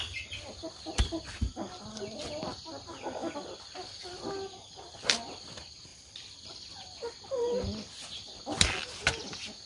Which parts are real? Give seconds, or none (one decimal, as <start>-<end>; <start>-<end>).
0.0-5.9; 6.5-9.7